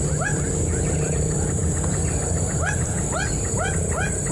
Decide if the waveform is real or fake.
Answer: real